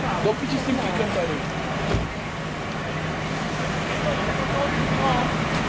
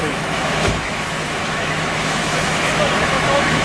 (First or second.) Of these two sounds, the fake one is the second